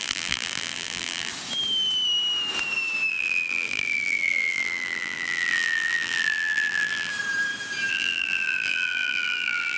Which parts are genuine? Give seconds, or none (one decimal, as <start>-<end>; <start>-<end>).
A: 1.3-3.1; 7.1-7.9